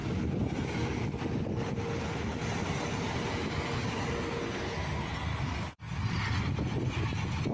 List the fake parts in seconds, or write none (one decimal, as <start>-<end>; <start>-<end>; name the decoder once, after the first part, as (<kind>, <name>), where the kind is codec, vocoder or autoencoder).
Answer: none